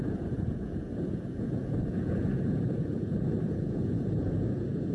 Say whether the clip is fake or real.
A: fake